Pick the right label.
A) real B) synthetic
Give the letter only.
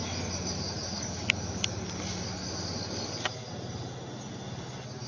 A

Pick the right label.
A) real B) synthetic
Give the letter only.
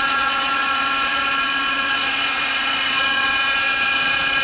B